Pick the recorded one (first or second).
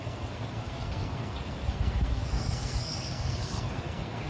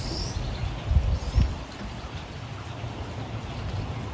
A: second